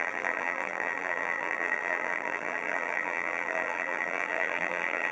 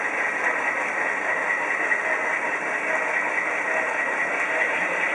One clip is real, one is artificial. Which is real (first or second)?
second